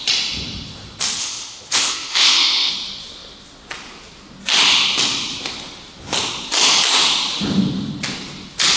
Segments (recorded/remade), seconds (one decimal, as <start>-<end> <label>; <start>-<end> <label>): 0.0-1.2 recorded; 1.2-2.7 remade; 2.7-8.8 recorded

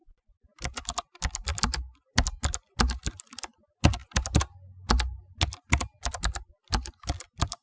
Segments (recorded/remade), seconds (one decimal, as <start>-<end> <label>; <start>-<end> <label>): 0.0-7.6 recorded

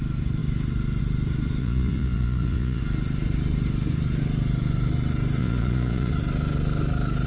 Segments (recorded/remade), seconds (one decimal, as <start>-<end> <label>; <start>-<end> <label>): 0.0-1.6 recorded; 1.6-2.8 remade; 2.8-5.4 recorded; 5.4-6.1 remade; 6.1-7.3 recorded

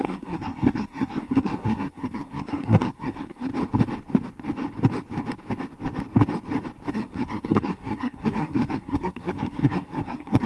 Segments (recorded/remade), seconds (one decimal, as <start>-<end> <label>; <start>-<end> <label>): 0.0-3.5 remade; 3.5-6.9 recorded; 6.9-10.5 remade

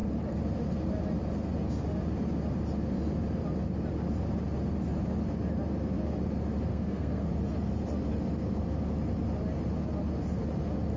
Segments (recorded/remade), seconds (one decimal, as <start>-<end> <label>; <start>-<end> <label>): 0.0-6.7 recorded; 6.7-7.3 remade; 7.3-11.0 recorded

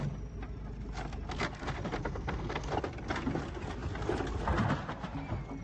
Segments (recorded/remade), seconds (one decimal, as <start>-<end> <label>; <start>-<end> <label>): 0.0-2.0 recorded; 2.0-2.7 remade; 2.7-5.6 recorded

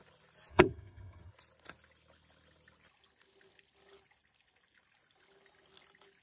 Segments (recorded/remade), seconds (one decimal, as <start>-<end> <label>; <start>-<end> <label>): 0.0-0.5 recorded; 0.5-1.3 remade; 1.3-6.2 recorded